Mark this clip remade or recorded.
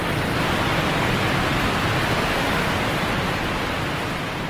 recorded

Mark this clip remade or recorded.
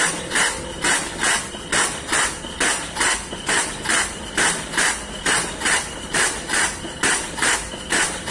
recorded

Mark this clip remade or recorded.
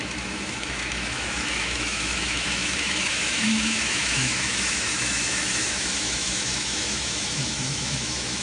remade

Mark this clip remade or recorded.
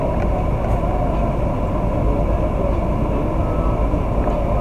recorded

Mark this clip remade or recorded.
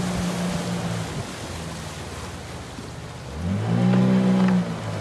recorded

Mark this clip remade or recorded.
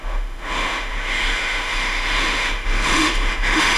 remade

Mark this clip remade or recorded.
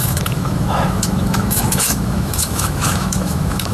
remade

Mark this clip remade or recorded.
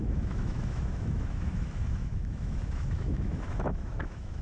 remade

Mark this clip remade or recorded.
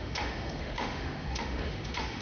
remade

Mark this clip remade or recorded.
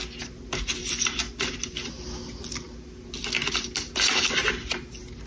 recorded